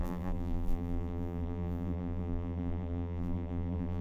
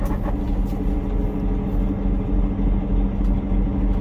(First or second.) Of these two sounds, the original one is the second